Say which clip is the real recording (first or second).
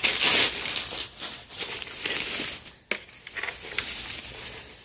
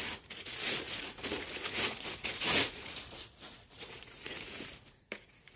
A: first